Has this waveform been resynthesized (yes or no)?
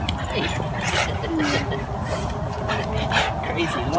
no